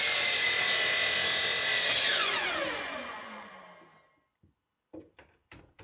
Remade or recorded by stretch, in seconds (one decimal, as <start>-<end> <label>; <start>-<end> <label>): 0.0-2.1 recorded; 2.1-3.5 remade; 3.5-5.8 recorded